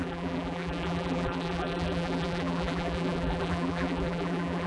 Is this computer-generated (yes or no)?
yes